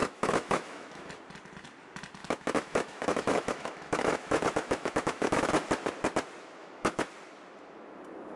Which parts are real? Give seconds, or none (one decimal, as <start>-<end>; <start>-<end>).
1.1-2.2; 5.5-6.6; 7.1-8.4